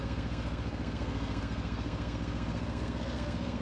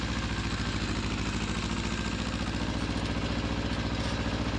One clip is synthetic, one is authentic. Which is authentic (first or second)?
second